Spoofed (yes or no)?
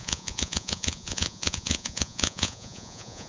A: yes